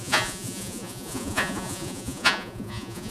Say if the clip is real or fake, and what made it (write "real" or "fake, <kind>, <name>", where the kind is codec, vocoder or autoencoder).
fake, vocoder, Vocos